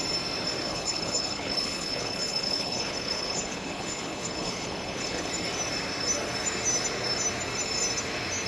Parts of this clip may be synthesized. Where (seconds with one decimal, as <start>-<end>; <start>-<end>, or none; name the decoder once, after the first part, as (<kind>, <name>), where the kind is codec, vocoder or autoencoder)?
0.7-5.3 (codec, HILCodec)